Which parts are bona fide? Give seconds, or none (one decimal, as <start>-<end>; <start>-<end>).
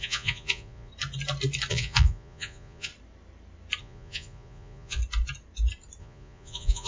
0.9-1.7; 2.9-3.8; 5.0-6.0